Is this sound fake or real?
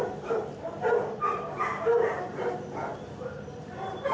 fake